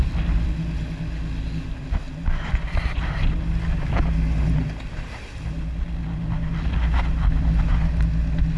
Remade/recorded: recorded